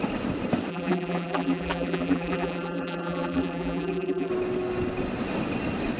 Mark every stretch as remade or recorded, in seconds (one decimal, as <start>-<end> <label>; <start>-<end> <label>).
0.0-0.7 recorded; 0.7-4.3 remade; 4.3-6.0 recorded